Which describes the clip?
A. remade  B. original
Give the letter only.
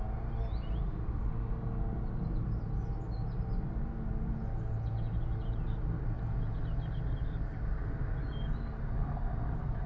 B